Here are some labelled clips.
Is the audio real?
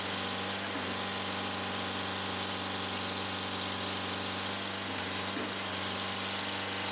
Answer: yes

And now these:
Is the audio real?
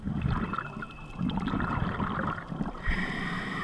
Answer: yes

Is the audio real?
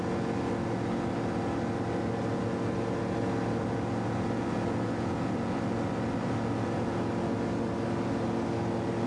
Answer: yes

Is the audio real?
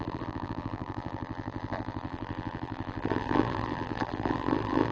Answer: no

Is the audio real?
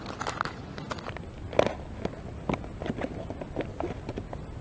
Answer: yes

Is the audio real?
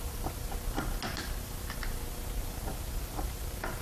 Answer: yes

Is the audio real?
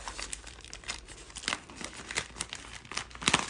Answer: yes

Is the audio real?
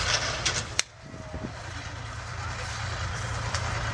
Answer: yes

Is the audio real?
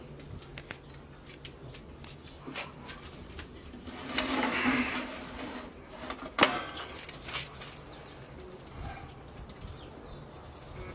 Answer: yes